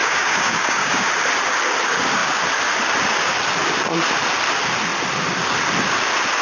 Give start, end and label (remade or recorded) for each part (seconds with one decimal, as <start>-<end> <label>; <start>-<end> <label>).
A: 0.0-1.1 remade; 1.1-6.4 recorded